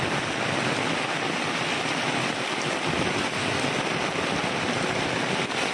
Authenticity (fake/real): real